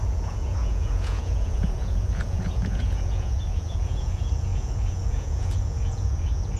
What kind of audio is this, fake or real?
fake